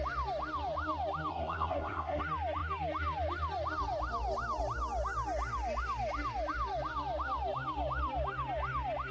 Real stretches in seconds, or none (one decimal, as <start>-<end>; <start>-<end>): 0.0-1.3; 2.2-9.1